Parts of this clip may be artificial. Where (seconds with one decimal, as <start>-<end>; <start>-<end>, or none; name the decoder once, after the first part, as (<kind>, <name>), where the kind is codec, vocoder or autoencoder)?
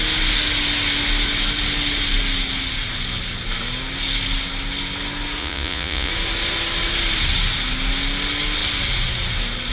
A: 5.4-6.1 (vocoder, Vocos)